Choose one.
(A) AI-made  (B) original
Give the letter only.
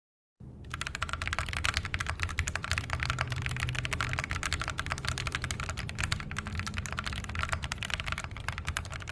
B